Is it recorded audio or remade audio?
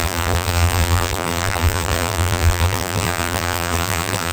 remade